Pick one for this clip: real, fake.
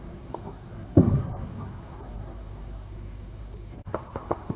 fake